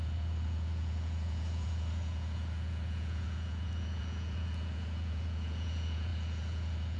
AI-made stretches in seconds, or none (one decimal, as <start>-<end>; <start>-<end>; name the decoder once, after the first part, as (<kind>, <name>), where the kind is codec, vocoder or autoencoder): 0.0-7.0 (vocoder, Vocos)